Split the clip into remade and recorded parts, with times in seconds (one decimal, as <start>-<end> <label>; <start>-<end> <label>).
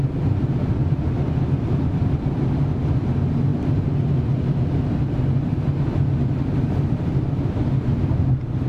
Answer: 0.0-0.8 recorded; 0.8-2.5 remade; 2.5-8.7 recorded